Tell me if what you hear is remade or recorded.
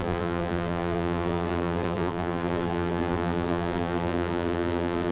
remade